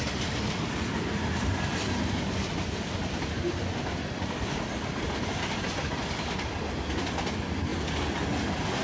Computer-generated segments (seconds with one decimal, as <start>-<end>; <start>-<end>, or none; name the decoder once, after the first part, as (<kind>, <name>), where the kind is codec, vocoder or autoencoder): none